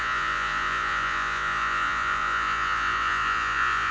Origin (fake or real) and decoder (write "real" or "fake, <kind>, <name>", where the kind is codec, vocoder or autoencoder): fake, vocoder, Vocos